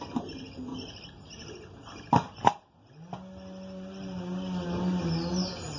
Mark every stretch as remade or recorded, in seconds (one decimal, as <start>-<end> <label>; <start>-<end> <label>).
0.0-5.8 recorded